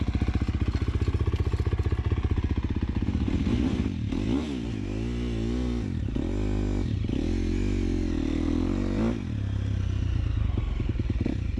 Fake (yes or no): no